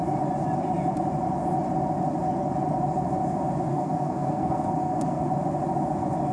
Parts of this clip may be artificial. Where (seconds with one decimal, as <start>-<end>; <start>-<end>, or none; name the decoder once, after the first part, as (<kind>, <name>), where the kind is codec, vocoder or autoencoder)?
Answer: 3.7-5.3 (codec, SNAC)

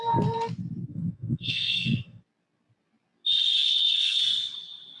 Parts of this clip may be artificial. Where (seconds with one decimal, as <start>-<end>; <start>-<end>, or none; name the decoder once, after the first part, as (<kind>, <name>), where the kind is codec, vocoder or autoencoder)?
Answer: 0.9-2.2 (codec, SNAC); 3.6-4.2

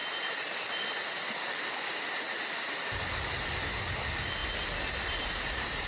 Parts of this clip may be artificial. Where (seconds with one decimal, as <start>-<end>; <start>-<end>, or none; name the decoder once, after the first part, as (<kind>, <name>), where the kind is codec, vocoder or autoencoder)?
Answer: none

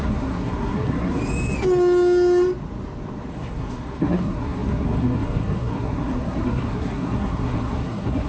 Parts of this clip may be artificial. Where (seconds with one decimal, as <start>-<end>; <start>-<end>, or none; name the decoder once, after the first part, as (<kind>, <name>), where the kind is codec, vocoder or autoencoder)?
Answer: 0.0-1.2 (codec, SNAC); 3.3-8.3

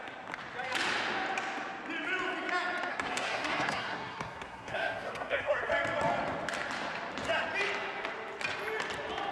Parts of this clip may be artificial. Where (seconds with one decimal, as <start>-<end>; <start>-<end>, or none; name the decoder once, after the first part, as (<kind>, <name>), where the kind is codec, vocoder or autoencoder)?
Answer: 2.9-5.7 (codec, SNAC)